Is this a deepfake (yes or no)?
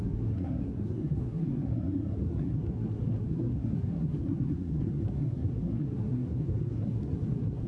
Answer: yes